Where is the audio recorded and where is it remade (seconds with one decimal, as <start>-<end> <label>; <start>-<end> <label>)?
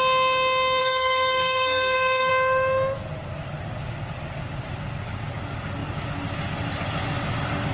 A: 0.0-0.8 recorded; 0.8-2.3 remade; 2.3-7.7 recorded